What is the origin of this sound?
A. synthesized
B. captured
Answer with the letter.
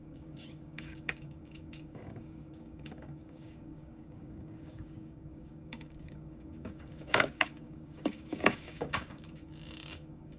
A